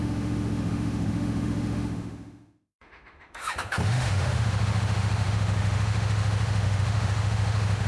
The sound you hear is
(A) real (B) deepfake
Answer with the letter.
B